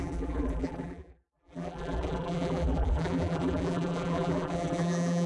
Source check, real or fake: fake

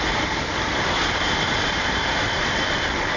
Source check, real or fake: fake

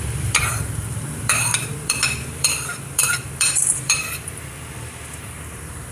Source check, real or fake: fake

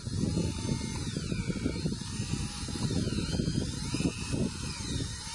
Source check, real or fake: real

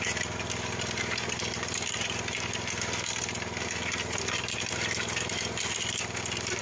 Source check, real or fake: fake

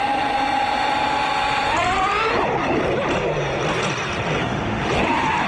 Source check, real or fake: real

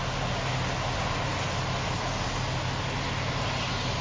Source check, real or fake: real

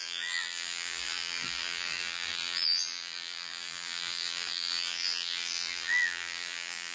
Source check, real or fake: fake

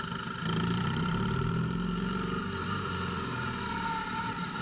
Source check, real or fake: fake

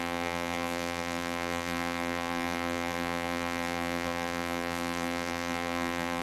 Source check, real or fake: fake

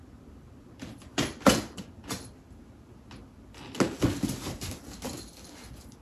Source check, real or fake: real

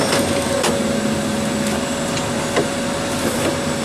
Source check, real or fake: real